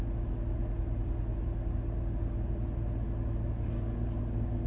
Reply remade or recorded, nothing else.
recorded